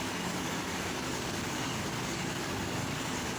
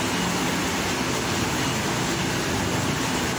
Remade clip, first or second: first